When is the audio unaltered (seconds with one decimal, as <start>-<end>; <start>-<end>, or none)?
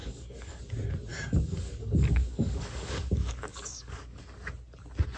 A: 0.6-1.1; 4.2-5.2